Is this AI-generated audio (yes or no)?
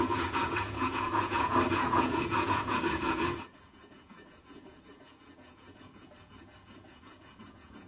yes